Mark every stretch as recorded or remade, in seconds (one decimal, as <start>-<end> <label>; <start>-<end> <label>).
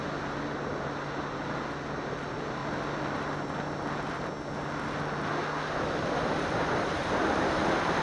0.0-2.6 remade; 2.6-6.0 recorded; 6.0-8.0 remade